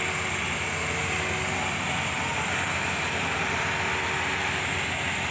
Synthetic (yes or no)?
no